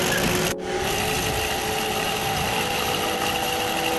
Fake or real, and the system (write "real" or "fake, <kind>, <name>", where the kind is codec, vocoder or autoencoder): real